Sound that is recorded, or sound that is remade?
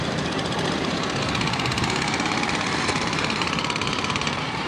remade